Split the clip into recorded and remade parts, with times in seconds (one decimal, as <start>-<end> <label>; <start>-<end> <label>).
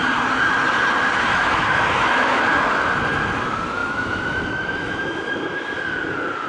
0.0-1.3 recorded; 1.3-2.4 remade; 2.4-3.8 recorded; 3.8-5.7 remade; 5.7-6.5 recorded